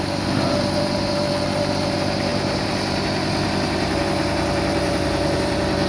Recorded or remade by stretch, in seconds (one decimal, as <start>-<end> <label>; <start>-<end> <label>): 0.0-5.9 remade